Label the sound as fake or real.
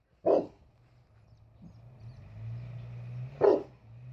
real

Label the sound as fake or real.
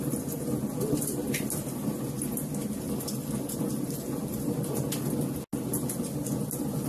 real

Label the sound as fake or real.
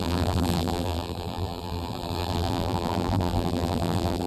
fake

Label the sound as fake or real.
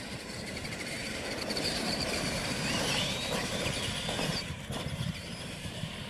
fake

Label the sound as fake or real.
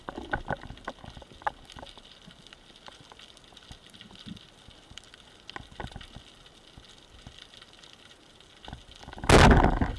real